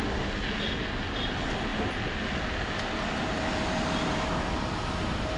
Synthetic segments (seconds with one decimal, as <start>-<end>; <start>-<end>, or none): none